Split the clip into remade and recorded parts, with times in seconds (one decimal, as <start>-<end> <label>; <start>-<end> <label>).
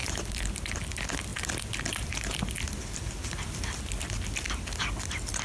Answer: 0.0-5.4 recorded